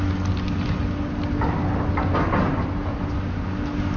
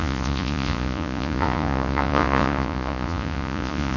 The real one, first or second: first